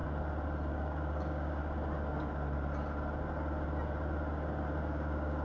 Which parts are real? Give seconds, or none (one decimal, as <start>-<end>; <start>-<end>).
0.0-0.7; 1.6-4.8